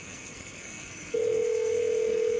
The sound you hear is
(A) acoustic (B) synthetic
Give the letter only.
B